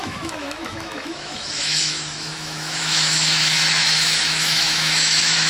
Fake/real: fake